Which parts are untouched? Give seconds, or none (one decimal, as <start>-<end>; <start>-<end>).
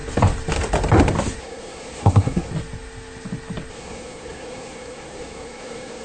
0.0-1.4; 2.5-3.7